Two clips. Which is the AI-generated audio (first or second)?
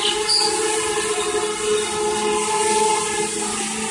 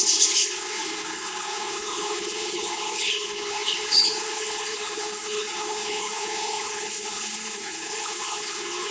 second